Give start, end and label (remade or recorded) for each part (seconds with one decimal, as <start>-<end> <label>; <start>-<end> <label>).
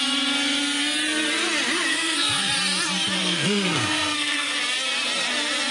0.0-1.9 recorded; 1.9-2.5 remade; 2.5-3.2 recorded; 3.2-4.6 remade; 4.6-5.7 recorded